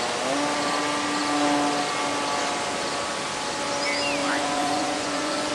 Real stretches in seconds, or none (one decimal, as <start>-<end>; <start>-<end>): 0.0-4.2